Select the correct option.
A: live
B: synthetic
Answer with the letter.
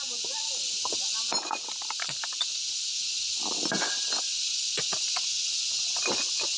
A